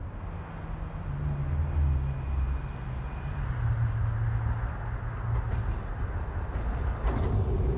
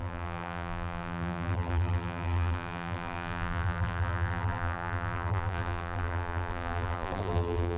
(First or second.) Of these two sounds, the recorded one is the first